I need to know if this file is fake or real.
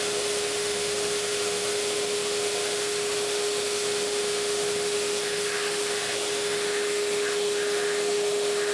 fake